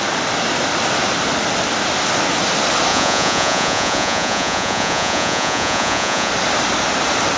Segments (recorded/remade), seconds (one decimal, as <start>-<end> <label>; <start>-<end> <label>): 0.0-2.9 recorded; 2.9-6.3 remade; 6.3-7.4 recorded

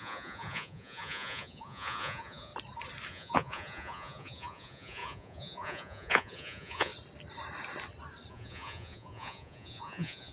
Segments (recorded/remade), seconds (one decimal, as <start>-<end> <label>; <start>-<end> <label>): 0.0-2.5 remade; 2.5-3.1 recorded; 3.1-6.9 remade; 6.9-8.3 recorded; 8.3-10.3 remade

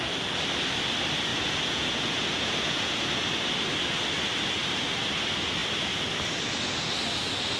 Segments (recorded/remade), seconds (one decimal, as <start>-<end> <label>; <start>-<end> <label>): 0.0-1.3 recorded; 1.3-3.3 remade; 3.3-7.6 recorded

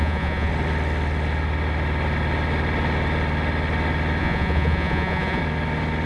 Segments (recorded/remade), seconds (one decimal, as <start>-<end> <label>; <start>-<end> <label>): 0.0-0.5 remade; 0.5-4.2 recorded; 4.2-5.4 remade; 5.4-6.1 recorded

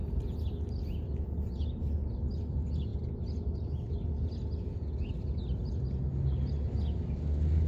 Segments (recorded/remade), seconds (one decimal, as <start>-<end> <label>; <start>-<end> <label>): 0.0-7.7 recorded